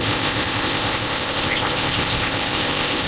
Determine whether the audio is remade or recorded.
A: remade